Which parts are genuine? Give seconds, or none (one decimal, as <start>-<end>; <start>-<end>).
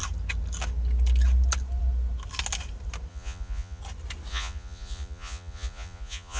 0.0-3.1; 3.8-4.3